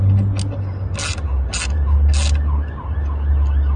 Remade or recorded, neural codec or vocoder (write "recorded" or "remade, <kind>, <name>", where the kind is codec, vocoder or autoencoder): recorded